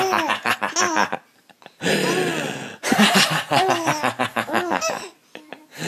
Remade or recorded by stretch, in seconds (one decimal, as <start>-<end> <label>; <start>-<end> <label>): 0.0-4.3 recorded; 4.3-4.8 remade; 4.8-5.9 recorded